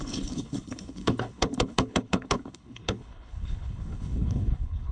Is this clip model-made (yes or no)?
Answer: yes